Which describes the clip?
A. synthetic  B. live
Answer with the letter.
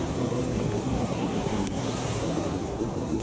A